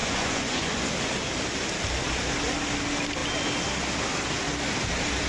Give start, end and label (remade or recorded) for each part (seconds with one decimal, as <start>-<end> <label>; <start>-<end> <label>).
0.0-0.8 remade; 0.8-5.3 recorded